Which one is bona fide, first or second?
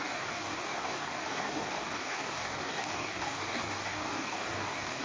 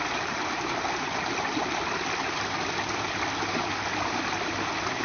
second